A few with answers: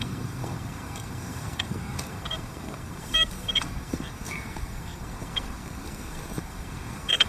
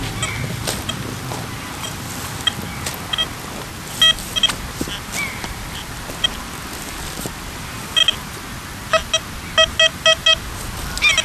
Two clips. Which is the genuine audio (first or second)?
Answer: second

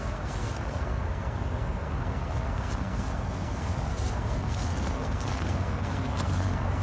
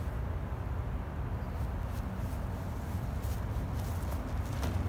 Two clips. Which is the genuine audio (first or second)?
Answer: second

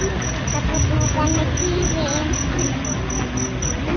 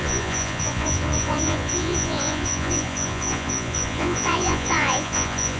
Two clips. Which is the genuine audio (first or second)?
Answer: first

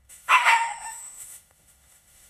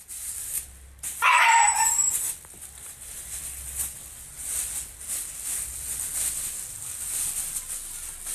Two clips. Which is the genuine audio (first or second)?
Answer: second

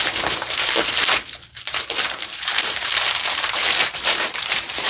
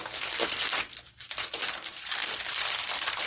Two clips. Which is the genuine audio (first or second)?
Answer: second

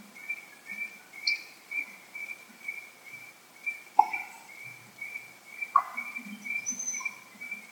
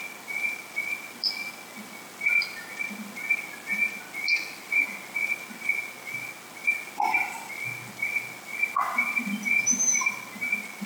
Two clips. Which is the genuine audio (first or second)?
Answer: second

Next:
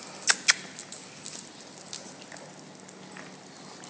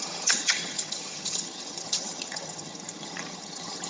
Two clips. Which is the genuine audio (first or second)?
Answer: first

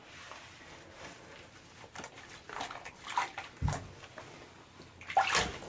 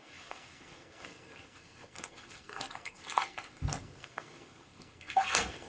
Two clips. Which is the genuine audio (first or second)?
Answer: first